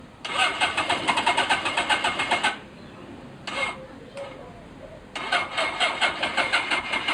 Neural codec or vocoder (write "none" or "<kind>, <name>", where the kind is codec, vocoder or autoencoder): none